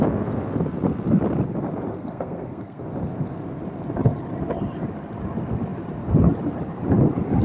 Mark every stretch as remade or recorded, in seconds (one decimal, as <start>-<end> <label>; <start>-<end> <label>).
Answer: 0.0-1.9 recorded; 1.9-2.8 remade; 2.8-7.4 recorded